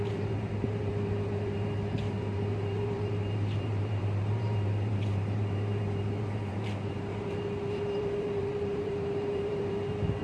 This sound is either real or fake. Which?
fake